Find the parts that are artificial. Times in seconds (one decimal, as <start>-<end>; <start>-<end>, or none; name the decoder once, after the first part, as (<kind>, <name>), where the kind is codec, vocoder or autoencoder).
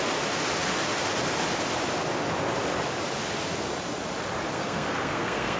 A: 4.5-5.6 (codec, SNAC)